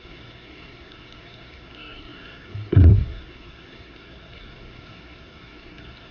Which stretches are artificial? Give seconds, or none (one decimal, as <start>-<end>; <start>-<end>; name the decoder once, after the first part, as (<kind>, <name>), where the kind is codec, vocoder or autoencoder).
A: 0.0-6.1 (codec, SNAC)